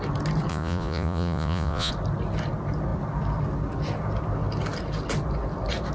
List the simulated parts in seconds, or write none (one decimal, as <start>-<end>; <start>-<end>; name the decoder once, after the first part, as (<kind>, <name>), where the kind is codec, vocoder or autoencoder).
0.5-1.9 (vocoder, Vocos)

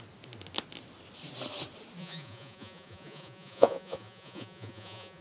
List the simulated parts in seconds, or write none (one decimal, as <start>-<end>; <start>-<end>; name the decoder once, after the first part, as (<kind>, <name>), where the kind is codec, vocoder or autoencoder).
2.0-5.2 (vocoder, Vocos)

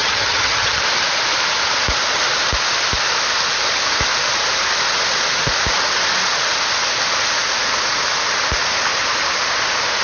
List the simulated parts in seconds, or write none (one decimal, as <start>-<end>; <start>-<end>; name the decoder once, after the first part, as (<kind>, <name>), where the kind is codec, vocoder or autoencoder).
0.0-0.8 (vocoder, HiFi-GAN)

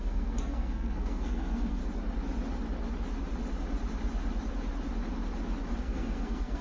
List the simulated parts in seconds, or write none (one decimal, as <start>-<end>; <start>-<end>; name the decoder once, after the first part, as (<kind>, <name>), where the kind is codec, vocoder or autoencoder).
0.0-1.8 (codec, SNAC); 5.8-6.6

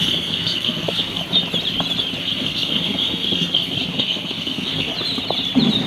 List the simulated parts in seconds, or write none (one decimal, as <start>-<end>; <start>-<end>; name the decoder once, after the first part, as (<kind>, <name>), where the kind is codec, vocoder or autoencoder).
0.0-1.2 (codec, SNAC); 2.2-4.9